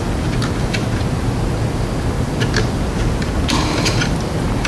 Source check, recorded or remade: recorded